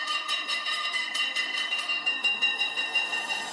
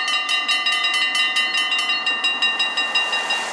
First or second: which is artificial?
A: first